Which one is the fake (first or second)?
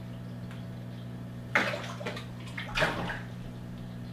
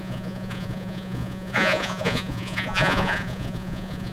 second